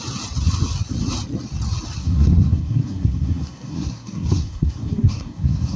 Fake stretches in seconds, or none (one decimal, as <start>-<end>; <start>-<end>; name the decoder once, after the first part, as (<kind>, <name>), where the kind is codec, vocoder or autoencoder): 2.0-5.8 (codec, SNAC)